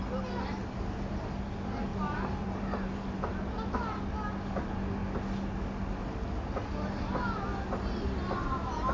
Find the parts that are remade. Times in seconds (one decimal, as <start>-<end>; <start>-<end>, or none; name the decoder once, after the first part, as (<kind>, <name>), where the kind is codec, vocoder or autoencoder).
none